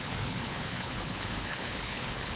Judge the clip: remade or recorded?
remade